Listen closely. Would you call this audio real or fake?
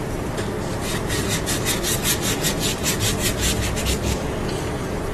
real